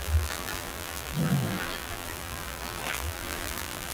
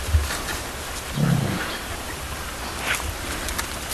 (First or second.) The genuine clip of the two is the second